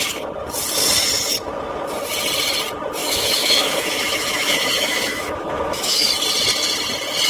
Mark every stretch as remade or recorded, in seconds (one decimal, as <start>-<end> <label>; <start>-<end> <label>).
0.0-3.0 recorded; 3.0-6.1 remade; 6.1-7.3 recorded